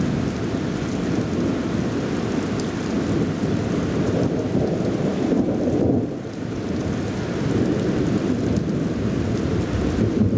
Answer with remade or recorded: recorded